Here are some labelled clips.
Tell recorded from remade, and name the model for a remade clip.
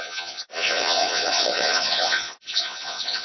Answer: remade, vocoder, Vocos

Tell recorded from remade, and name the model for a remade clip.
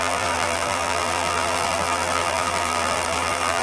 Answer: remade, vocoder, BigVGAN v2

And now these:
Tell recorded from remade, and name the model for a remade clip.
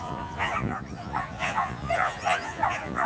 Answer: remade, vocoder, Vocos